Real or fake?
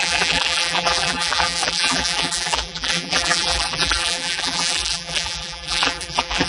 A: fake